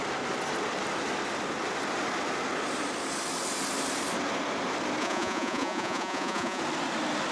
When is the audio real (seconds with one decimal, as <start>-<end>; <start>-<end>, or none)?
0.0-5.0; 6.6-7.3